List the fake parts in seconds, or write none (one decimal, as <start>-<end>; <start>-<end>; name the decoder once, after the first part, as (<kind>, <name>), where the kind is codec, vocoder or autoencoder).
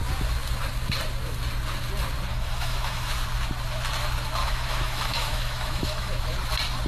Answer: 2.3-3.1 (autoencoder, DAC-VAE); 4.4-6.2